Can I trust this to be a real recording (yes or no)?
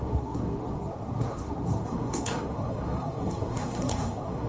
no